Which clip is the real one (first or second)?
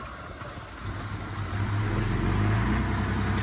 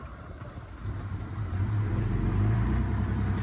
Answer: first